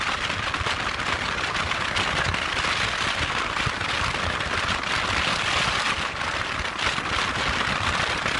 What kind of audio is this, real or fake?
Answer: real